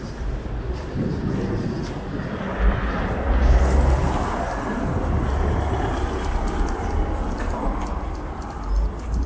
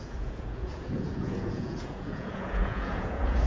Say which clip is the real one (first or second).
first